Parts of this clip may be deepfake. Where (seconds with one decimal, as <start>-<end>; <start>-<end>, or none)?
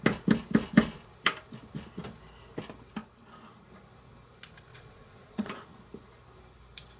4.7-5.5